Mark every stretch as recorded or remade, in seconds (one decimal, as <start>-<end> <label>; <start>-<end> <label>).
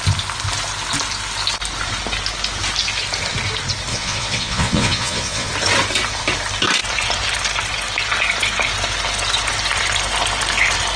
0.0-3.9 recorded; 3.9-5.5 remade; 5.5-11.0 recorded